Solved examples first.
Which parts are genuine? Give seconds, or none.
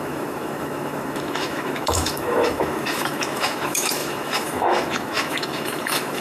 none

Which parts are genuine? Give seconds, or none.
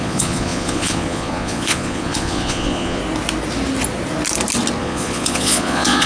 3.0-4.8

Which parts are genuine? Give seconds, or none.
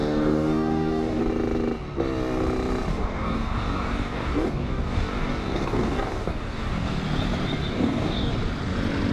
1.2-2.9; 7.0-7.7; 8.3-9.1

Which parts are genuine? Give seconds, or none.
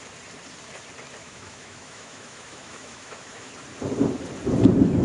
0.0-1.2; 3.5-5.0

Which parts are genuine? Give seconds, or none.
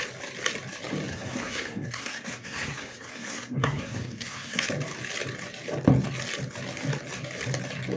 0.0-1.1; 4.7-8.0